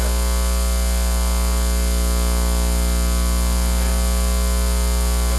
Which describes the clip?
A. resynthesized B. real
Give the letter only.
B